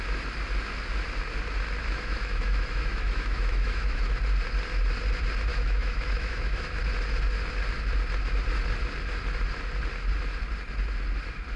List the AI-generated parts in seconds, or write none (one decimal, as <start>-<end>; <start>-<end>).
1.8-4.1; 5.5-6.8